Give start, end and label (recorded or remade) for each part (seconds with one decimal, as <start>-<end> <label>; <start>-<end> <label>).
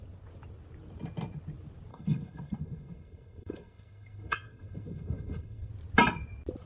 0.0-1.9 recorded; 1.9-5.7 remade; 5.7-6.7 recorded